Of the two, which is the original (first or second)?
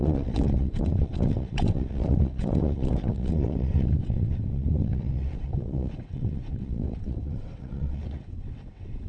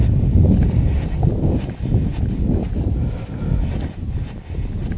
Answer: second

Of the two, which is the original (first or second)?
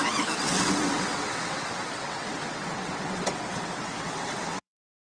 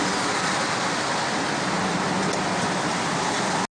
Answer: second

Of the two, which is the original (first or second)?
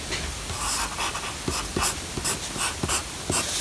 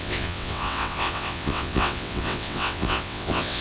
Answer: first